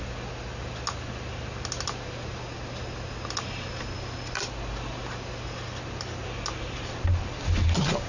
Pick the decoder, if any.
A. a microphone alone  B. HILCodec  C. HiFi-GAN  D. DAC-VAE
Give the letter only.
A